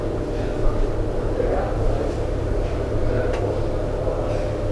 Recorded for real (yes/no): yes